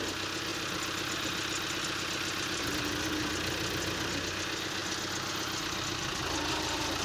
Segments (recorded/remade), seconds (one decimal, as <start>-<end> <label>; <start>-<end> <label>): 0.0-7.0 recorded